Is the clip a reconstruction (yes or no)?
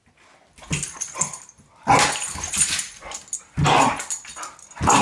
no